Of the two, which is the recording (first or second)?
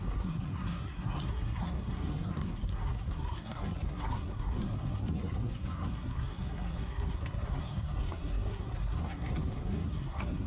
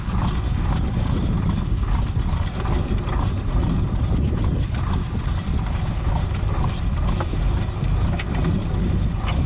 second